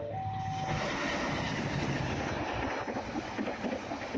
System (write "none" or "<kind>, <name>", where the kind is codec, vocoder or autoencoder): none